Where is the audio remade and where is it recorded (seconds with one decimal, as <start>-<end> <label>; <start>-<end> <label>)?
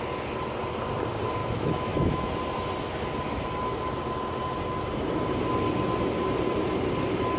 0.0-1.4 recorded; 1.4-2.3 remade; 2.3-7.4 recorded